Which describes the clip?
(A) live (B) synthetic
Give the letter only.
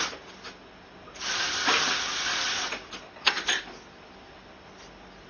A